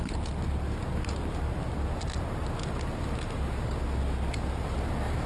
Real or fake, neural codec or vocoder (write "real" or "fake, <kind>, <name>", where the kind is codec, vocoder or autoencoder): real